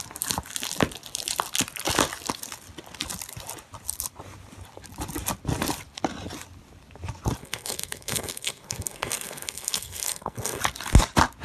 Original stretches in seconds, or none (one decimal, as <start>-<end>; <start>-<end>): 0.0-7.4; 10.6-11.4